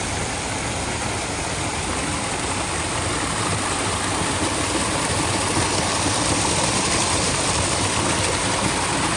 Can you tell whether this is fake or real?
real